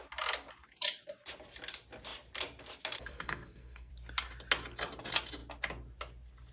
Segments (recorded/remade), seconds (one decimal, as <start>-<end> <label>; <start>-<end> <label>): 0.0-3.0 recorded; 3.0-3.9 remade; 3.9-6.5 recorded